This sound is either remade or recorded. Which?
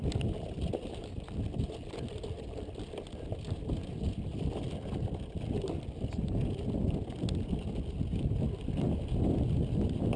recorded